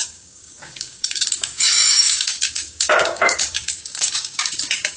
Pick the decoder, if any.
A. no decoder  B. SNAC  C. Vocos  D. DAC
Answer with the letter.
D